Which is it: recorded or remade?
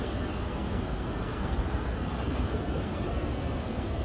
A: remade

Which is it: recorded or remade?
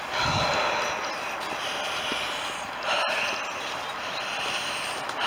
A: recorded